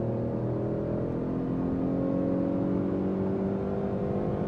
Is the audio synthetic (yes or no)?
no